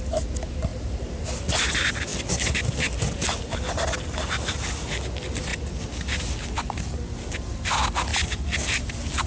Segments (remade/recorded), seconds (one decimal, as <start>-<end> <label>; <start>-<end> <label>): 0.0-0.7 recorded; 0.7-1.7 remade; 1.7-2.1 recorded; 2.1-4.9 remade; 4.9-9.3 recorded